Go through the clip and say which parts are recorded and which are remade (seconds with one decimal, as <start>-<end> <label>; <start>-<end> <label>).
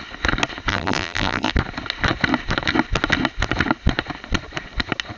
0.0-0.7 recorded; 0.7-1.5 remade; 1.5-5.2 recorded